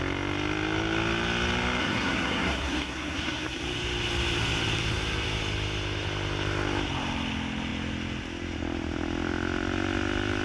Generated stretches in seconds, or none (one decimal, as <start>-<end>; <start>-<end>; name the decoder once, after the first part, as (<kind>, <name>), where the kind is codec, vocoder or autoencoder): 1.8-3.6 (codec, SNAC)